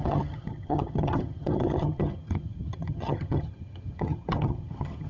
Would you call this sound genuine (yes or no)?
no